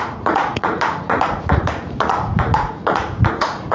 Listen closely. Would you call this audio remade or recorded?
remade